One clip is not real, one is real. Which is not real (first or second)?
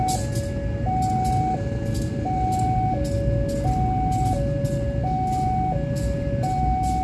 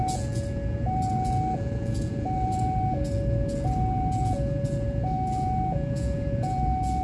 second